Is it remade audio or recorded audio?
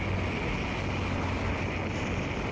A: recorded